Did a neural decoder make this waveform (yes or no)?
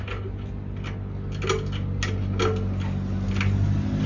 no